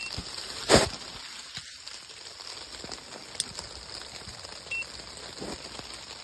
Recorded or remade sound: recorded